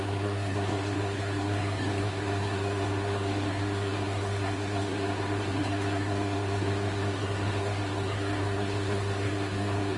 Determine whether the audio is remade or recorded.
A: remade